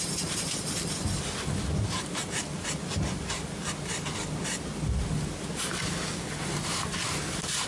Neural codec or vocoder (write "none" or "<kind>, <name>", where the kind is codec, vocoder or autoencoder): none